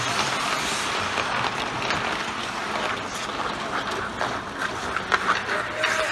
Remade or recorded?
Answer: recorded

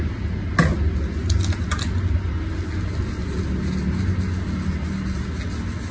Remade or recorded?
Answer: recorded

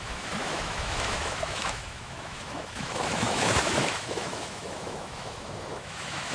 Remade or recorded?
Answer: remade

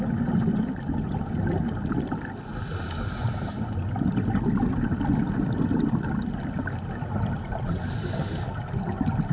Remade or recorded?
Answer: recorded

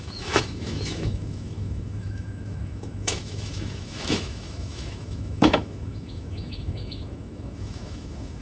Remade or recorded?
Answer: remade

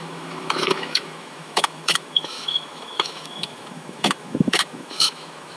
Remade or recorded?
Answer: remade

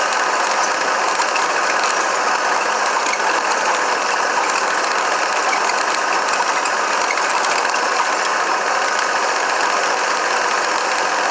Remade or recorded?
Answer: recorded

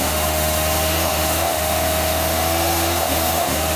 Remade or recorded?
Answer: remade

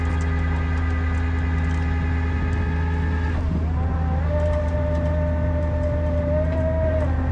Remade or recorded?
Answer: recorded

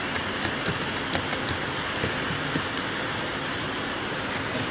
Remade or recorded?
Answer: recorded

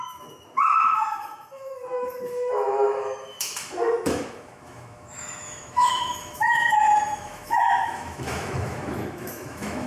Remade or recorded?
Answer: remade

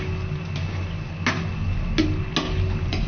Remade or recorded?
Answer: recorded